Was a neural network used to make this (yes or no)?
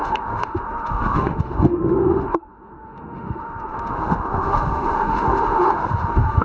yes